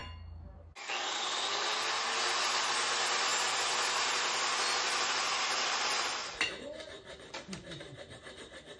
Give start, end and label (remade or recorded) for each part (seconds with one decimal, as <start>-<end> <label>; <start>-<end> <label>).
0.0-8.8 recorded